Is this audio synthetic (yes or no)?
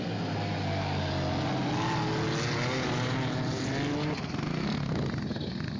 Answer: no